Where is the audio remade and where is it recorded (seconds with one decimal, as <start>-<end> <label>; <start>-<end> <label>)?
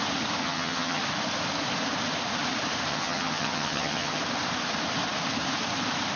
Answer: 0.0-0.4 recorded; 0.4-1.0 remade; 1.0-2.9 recorded; 2.9-4.2 remade; 4.2-6.2 recorded